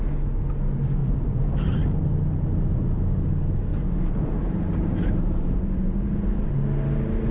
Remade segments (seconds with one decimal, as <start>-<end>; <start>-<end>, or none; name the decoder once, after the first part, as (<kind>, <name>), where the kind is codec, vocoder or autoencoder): 1.0-1.8 (vocoder, BigVGAN v2); 3.7-5.7